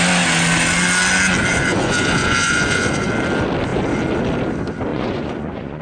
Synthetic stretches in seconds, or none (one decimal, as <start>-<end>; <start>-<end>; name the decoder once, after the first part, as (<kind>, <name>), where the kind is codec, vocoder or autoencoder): 1.5-3.1 (vocoder, Vocos); 4.9-5.8